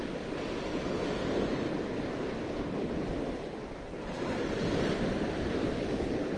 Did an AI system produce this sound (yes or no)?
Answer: no